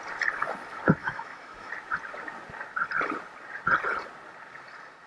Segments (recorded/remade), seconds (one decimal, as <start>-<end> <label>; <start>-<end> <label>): 0.0-1.0 recorded; 1.0-1.7 remade; 1.7-5.1 recorded

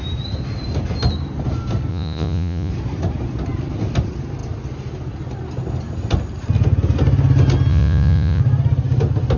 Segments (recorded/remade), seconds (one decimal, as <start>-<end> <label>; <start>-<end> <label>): 0.0-1.9 recorded; 1.9-2.7 remade; 2.7-7.7 recorded; 7.7-8.4 remade; 8.4-9.4 recorded